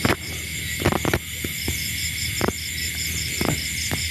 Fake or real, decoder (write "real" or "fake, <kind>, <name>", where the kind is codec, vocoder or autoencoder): real